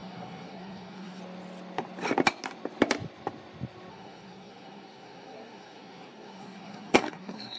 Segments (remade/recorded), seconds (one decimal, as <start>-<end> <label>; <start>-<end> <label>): 0.0-1.2 remade; 1.2-3.9 recorded; 3.9-7.6 remade